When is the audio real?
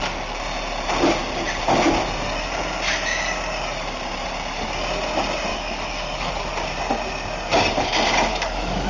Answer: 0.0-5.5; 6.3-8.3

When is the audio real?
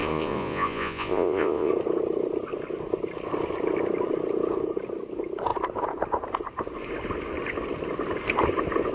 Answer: 1.7-8.9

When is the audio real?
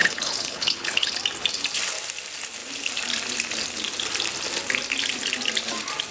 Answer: 1.1-6.1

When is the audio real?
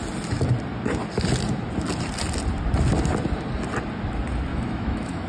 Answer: 0.0-4.5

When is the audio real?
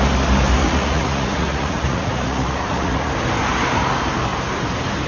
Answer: 0.0-0.6; 3.1-5.1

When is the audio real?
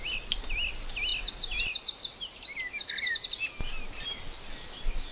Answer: 0.0-5.1